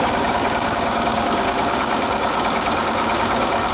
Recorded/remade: remade